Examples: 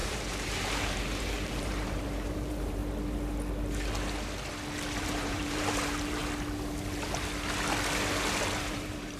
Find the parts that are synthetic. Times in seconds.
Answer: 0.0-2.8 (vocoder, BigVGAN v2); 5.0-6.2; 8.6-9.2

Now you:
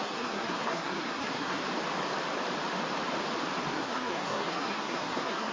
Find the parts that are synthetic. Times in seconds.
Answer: 0.0-1.6 (codec, SNAC); 3.7-5.5